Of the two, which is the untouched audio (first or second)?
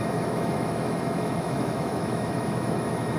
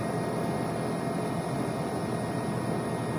second